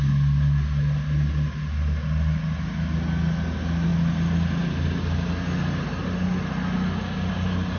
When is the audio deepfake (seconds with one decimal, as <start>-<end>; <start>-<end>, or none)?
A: none

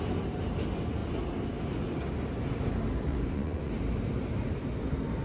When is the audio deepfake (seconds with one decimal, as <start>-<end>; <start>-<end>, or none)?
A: 3.1-3.7

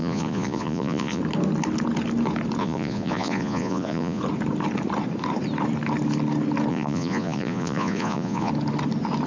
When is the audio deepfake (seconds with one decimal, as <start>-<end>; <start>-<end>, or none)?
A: 0.0-1.2; 2.6-4.2; 6.7-8.5